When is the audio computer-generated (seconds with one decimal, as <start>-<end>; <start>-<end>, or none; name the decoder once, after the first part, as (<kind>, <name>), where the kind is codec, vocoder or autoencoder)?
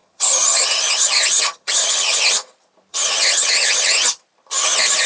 0.0-2.2 (vocoder, HiFi-GAN); 2.9-4.2